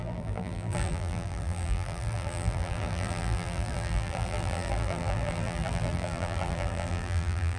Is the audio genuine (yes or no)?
no